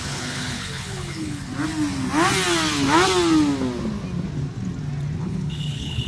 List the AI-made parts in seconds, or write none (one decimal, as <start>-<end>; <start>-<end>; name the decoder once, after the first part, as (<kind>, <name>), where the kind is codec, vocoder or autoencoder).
0.0-1.5 (codec, HILCodec); 5.2-6.1